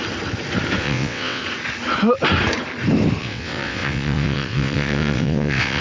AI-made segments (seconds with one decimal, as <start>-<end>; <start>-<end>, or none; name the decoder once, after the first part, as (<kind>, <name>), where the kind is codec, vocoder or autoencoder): 0.8-1.4 (vocoder, WaveNeXt); 3.2-5.8